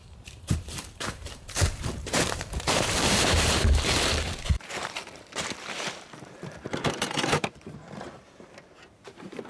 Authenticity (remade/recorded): remade